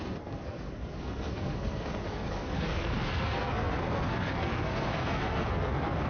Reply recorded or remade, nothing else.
remade